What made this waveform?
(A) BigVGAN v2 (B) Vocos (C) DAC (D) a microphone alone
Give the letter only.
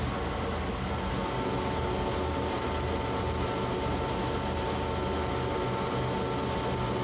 D